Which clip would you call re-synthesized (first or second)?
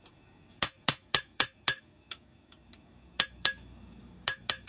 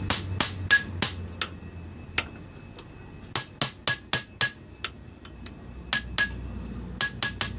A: first